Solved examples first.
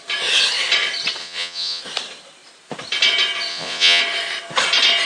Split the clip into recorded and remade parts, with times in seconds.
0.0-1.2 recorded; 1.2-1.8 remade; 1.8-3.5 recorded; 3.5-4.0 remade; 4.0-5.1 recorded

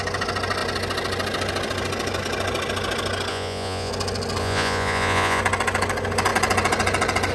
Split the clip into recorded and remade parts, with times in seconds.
0.0-3.3 recorded; 3.3-3.9 remade; 3.9-4.4 recorded; 4.4-5.4 remade; 5.4-7.3 recorded

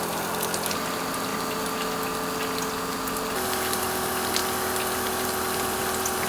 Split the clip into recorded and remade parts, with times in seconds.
0.0-1.3 recorded; 1.3-3.8 remade; 3.8-4.4 recorded; 4.4-5.8 remade; 5.8-6.3 recorded

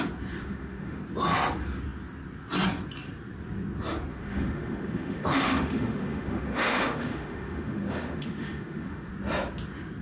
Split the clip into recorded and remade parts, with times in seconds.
0.0-0.4 recorded; 0.4-1.0 remade; 1.0-4.1 recorded; 4.1-9.1 remade; 9.1-10.0 recorded

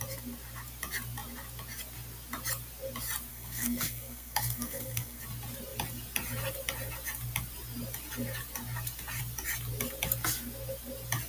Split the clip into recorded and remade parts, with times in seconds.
0.0-3.3 recorded; 3.3-5.2 remade; 5.2-11.3 recorded

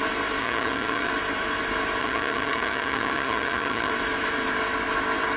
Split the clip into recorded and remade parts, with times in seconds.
0.0-0.4 recorded; 0.4-1.1 remade; 1.1-2.0 recorded; 2.0-3.9 remade; 3.9-5.4 recorded